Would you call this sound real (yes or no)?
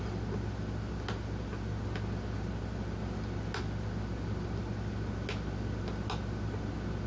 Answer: yes